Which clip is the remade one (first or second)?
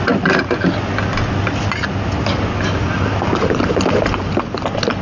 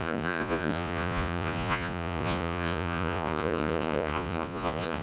second